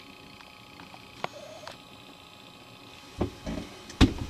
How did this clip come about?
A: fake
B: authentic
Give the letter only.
B